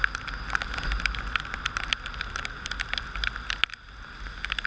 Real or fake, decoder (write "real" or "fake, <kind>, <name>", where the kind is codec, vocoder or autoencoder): real